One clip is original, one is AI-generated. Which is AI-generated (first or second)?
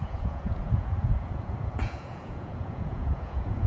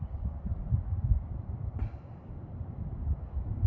first